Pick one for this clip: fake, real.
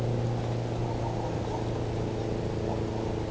real